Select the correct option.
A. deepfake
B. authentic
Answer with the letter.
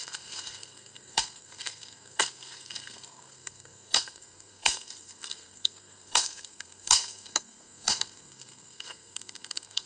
A